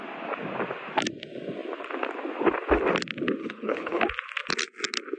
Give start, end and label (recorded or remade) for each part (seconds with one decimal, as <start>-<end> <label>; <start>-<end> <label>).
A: 0.0-3.4 recorded; 3.4-4.0 remade; 4.0-5.2 recorded